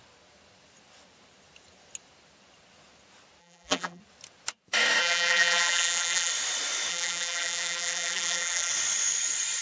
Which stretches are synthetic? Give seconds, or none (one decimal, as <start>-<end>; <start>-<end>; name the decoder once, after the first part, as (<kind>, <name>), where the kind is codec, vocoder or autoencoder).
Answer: 3.4-4.0 (vocoder, BigVGAN v2); 5.0-6.3; 6.9-8.7